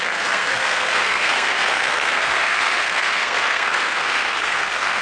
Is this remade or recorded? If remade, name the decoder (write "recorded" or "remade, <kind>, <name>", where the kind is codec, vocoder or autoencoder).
remade, codec, SNAC